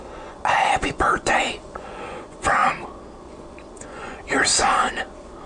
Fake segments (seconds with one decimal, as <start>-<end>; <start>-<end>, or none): 0.0-2.6; 3.2-4.2